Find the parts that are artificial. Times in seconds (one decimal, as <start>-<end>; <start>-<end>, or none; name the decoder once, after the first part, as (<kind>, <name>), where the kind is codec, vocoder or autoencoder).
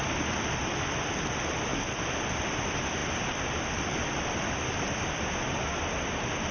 1.7-2.4 (vocoder, BigVGAN v2); 3.0-4.4